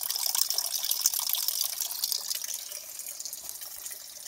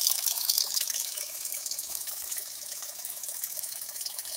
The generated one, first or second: second